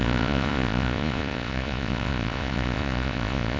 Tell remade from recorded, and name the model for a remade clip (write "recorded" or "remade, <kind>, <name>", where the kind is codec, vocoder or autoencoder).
remade, vocoder, Vocos